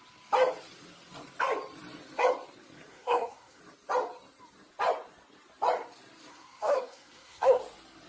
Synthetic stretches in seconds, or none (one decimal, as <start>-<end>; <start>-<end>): 2.9-3.6; 6.3-7.6